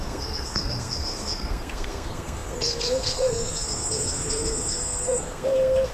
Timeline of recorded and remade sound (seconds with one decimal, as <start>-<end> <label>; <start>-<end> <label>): 0.0-5.9 remade